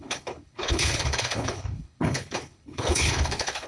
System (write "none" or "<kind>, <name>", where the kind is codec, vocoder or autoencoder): codec, HILCodec